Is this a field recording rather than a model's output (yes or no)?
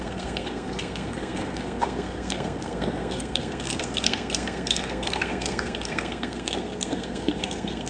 no